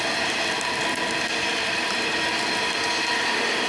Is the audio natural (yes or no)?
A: yes